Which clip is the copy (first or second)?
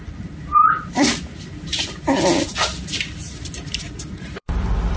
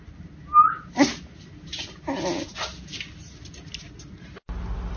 first